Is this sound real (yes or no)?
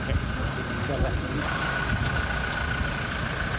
yes